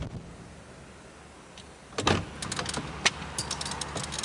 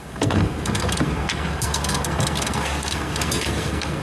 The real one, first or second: first